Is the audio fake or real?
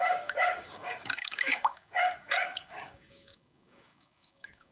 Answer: fake